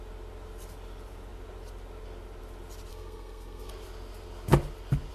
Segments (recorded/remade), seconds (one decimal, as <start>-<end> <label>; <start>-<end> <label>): 0.0-2.9 recorded; 2.9-3.7 remade; 3.7-5.1 recorded